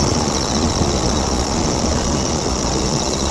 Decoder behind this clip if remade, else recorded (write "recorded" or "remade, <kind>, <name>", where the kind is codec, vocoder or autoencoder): remade, vocoder, Vocos